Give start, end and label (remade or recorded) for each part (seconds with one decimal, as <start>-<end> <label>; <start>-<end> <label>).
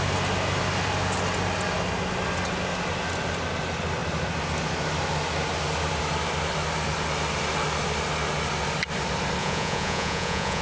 0.0-9.4 recorded; 9.4-10.6 remade